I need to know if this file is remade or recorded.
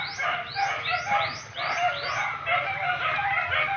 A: recorded